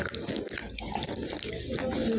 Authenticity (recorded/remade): recorded